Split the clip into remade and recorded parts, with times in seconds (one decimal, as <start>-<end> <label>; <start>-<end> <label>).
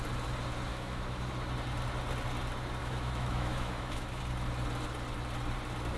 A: 0.0-0.7 recorded; 0.7-1.3 remade; 1.3-2.8 recorded; 2.8-4.2 remade; 4.2-6.0 recorded